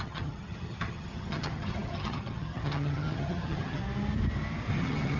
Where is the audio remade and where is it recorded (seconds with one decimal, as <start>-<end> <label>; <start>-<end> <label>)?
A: 0.0-3.8 remade; 3.8-4.7 recorded; 4.7-5.2 remade